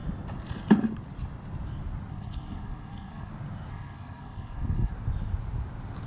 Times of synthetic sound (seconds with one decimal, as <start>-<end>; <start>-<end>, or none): 2.1-3.3; 3.7-4.9